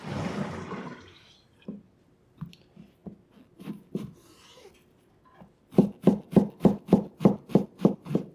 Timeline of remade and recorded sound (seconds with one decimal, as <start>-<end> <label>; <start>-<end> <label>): 0.0-8.3 recorded